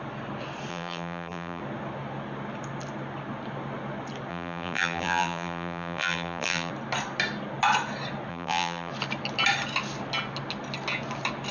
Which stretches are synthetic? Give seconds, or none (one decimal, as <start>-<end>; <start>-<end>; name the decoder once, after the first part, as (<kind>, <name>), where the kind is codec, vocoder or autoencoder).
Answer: 0.7-1.6 (vocoder, BigVGAN v2); 4.3-6.7; 8.3-8.9